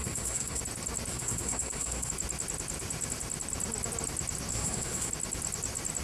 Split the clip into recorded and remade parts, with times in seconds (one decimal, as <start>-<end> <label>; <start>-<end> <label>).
0.0-0.6 remade; 0.6-1.1 recorded; 1.1-2.1 remade; 2.1-4.5 recorded; 4.5-5.1 remade; 5.1-6.0 recorded